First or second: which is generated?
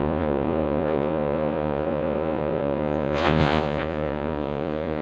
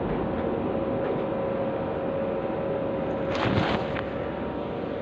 first